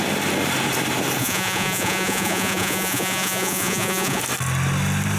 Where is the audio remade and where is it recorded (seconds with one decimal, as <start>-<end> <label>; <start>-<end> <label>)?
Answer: 0.0-1.2 recorded; 1.2-4.2 remade; 4.2-5.2 recorded